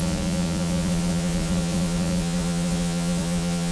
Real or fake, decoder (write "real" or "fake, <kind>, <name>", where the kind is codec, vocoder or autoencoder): fake, vocoder, Vocos